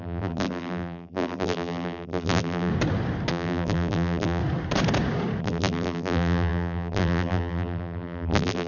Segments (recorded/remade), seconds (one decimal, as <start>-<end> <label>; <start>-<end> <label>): 0.0-2.7 remade; 2.7-3.3 recorded; 3.3-4.4 remade; 4.4-5.4 recorded; 5.4-8.7 remade